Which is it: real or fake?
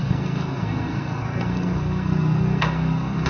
fake